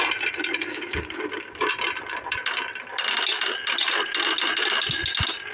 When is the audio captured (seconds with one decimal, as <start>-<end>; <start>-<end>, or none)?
0.0-0.6; 1.7-5.5